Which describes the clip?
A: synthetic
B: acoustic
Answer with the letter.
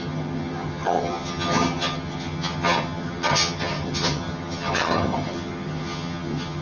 A